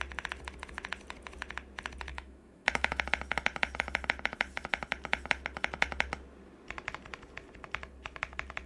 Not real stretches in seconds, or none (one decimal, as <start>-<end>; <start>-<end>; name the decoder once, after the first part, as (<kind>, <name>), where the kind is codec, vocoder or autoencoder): 2.1-3.0 (autoencoder, DAC-VAE)